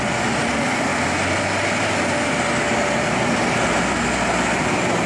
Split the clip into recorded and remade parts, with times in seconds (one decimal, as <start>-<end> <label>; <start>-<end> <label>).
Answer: 0.0-5.1 recorded